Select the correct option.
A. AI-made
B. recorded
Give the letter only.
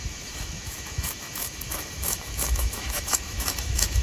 A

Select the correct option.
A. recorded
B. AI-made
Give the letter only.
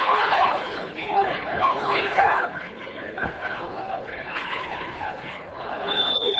B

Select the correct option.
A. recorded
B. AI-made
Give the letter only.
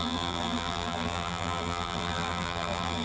B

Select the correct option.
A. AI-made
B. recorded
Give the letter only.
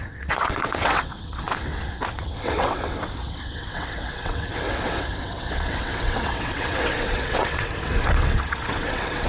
A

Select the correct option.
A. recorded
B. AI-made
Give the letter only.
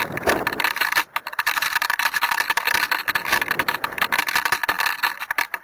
A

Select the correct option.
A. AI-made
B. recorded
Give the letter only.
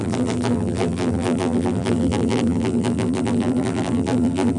A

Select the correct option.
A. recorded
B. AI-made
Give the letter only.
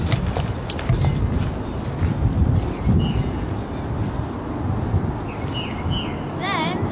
A